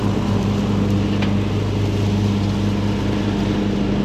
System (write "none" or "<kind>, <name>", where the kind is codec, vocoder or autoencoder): none